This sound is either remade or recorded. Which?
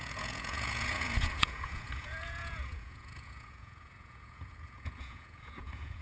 remade